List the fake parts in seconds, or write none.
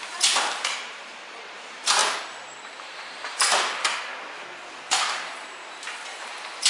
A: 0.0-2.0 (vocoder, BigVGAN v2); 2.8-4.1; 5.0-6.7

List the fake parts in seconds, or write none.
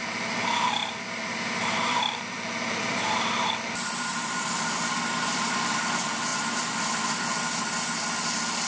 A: 0.8-5.6 (vocoder, BigVGAN v2); 6.3-7.2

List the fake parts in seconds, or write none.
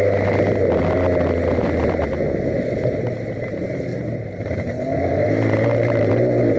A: 1.6-2.4 (vocoder, BigVGAN v2); 3.9-6.1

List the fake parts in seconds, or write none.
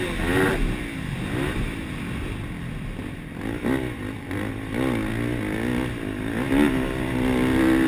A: 3.0-4.5 (vocoder, BigVGAN v2)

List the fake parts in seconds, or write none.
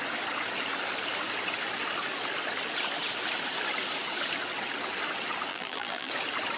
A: 5.5-6.1 (vocoder, BigVGAN v2)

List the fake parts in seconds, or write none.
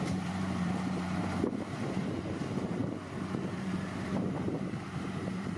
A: 0.0-2.8 (vocoder, BigVGAN v2); 3.4-5.6